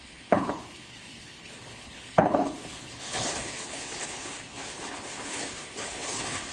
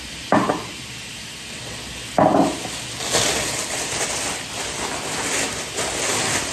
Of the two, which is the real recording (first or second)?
second